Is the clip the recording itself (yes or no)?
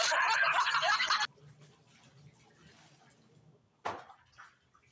yes